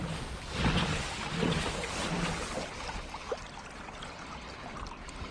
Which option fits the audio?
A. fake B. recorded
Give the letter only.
B